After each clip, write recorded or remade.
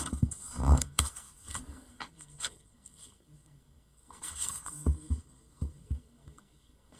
remade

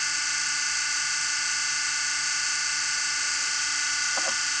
recorded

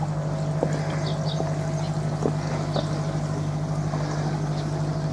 recorded